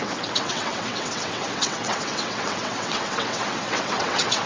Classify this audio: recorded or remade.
remade